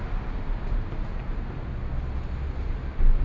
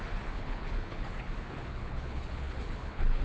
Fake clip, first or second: second